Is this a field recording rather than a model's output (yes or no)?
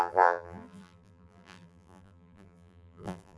no